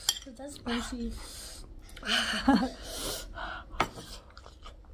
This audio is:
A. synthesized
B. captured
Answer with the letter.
B